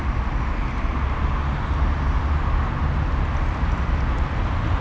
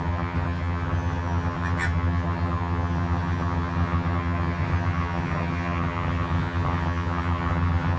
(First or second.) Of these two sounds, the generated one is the second